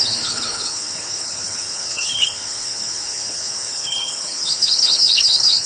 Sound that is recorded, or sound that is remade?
remade